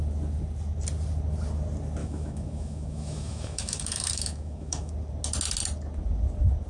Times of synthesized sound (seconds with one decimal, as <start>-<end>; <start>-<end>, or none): 2.0-4.9